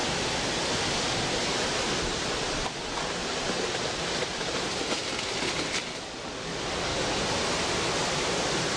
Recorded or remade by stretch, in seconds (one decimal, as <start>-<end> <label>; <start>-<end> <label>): 0.0-4.3 recorded; 4.3-5.0 remade; 5.0-6.9 recorded; 6.9-7.5 remade; 7.5-8.8 recorded